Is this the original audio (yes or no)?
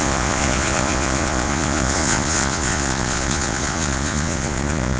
no